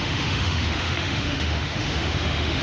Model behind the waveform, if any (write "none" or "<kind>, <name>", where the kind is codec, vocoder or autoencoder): autoencoder, DAC-VAE